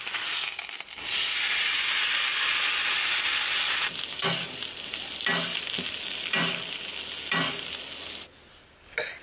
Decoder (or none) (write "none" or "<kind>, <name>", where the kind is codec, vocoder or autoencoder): none